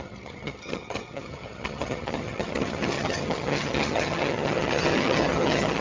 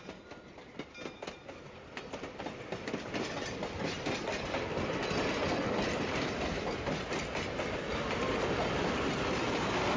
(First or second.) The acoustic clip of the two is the second